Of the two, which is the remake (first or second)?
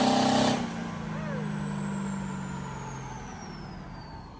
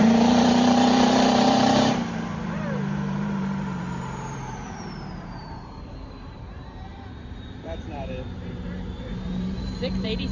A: second